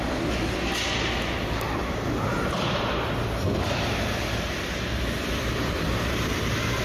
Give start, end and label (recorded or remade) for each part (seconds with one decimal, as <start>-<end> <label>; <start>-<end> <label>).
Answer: 0.0-1.8 recorded; 1.8-3.2 remade; 3.2-3.9 recorded; 3.9-6.8 remade